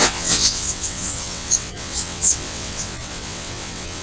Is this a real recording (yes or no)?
no